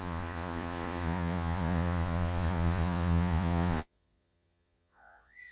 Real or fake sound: fake